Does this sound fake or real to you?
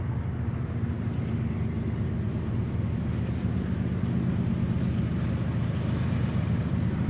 real